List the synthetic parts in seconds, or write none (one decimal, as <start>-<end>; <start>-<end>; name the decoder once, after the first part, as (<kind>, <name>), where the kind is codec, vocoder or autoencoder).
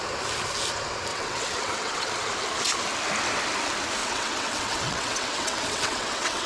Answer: 1.1-2.1 (vocoder, WaveNeXt); 4.0-6.5